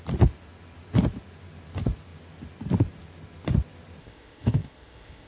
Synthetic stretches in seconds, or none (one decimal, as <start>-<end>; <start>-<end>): 4.0-5.3